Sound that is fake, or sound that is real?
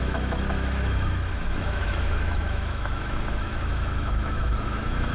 fake